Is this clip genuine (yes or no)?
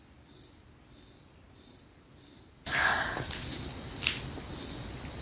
yes